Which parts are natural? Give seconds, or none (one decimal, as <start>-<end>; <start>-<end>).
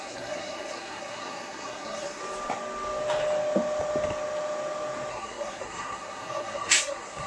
2.2-5.1